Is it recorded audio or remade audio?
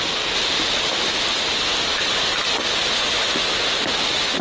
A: recorded